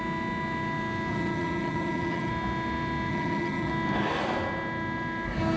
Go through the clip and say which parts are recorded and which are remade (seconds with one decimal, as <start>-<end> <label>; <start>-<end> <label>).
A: 0.0-1.1 recorded; 1.1-2.3 remade; 2.3-3.1 recorded; 3.1-3.7 remade; 3.7-5.6 recorded